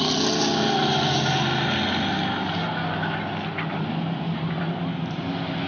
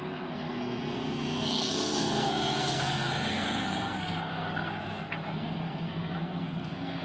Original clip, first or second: first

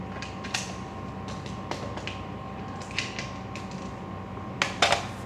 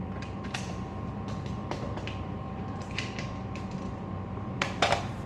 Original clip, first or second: first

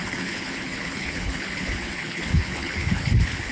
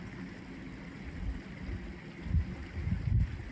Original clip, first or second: second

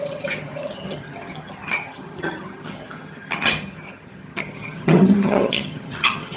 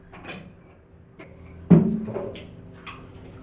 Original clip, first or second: second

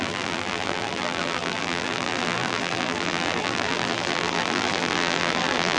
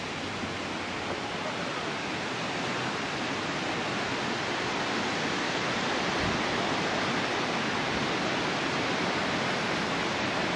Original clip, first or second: second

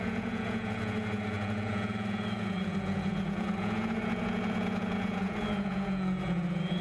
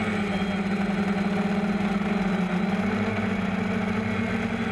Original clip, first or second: second